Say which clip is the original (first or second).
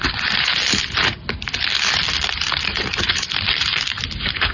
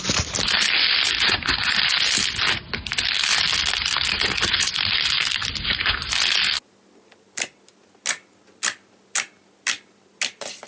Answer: second